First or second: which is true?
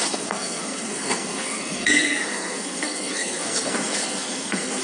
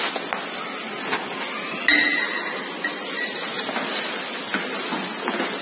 second